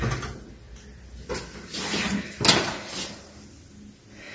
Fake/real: real